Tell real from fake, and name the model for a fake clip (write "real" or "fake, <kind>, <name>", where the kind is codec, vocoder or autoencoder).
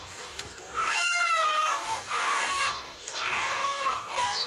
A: fake, codec, DAC